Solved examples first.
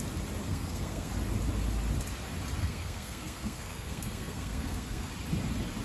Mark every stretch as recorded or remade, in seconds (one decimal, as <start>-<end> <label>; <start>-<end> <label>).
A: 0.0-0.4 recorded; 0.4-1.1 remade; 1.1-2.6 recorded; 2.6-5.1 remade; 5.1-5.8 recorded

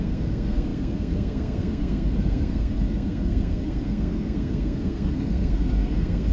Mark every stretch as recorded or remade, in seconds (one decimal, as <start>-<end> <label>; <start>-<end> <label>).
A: 0.0-6.3 remade

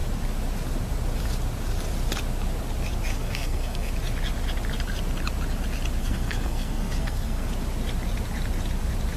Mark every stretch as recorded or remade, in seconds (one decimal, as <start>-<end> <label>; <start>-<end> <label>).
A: 0.0-3.1 recorded; 3.1-3.9 remade; 3.9-6.0 recorded; 6.0-7.5 remade; 7.5-9.2 recorded

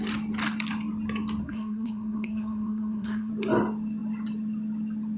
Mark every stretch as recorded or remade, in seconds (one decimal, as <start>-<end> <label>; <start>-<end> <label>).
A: 0.0-1.4 recorded; 1.4-3.3 remade; 3.3-5.2 recorded

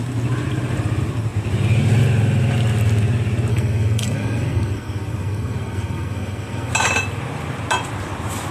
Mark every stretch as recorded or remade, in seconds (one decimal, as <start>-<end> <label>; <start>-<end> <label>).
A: 0.0-3.5 recorded; 3.5-6.7 remade; 6.7-8.5 recorded

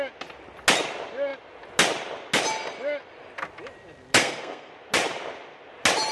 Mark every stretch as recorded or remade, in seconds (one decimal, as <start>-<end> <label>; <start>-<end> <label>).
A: 0.0-4.2 recorded; 4.2-4.7 remade; 4.7-6.1 recorded